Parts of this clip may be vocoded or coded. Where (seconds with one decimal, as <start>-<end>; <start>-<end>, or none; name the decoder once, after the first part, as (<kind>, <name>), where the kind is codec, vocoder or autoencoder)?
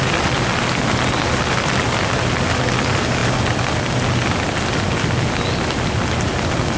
none